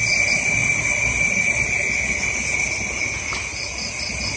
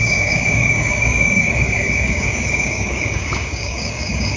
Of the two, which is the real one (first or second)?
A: first